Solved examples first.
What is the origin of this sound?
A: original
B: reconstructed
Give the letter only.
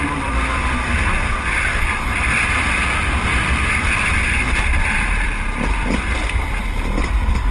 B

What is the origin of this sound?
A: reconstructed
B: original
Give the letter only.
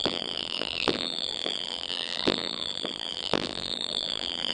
A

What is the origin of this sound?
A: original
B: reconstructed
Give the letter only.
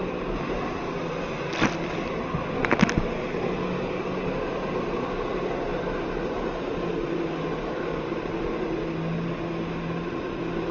A